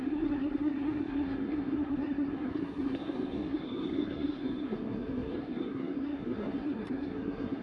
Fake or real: fake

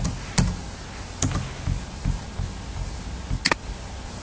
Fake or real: real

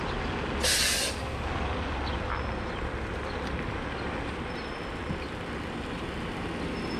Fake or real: real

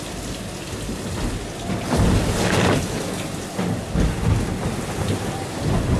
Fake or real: real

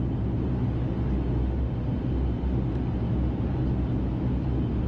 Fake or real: real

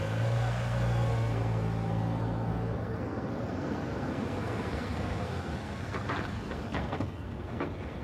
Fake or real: fake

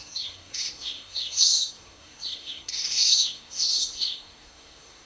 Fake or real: fake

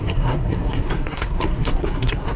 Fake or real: fake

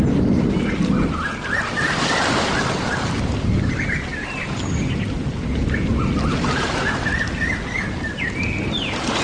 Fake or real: real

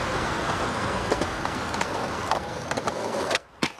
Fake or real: fake